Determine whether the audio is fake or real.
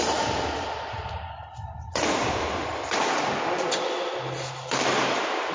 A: real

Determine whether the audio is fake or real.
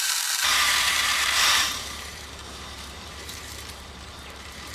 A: fake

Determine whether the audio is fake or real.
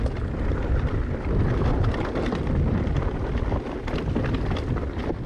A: real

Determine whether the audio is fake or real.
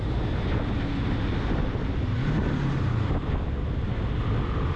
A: real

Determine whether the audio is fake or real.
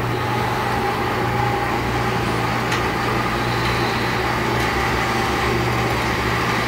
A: real